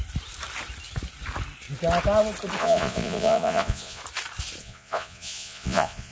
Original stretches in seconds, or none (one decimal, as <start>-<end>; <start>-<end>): 0.0-2.6; 4.0-4.6